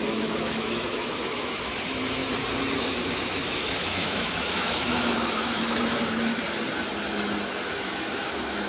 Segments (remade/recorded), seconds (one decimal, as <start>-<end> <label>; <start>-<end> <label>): 0.0-2.2 remade; 2.2-2.8 recorded; 2.8-6.4 remade; 6.4-7.7 recorded; 7.7-8.7 remade